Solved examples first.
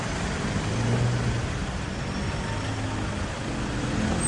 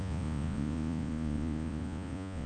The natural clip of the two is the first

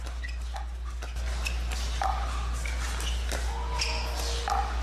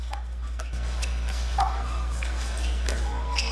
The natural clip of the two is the first